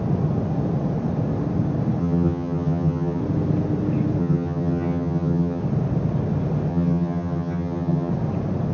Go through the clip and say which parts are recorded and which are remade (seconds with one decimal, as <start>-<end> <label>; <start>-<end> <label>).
0.0-2.0 recorded; 2.0-3.2 remade; 3.2-4.2 recorded; 4.2-5.6 remade; 5.6-6.7 recorded; 6.7-8.1 remade; 8.1-8.7 recorded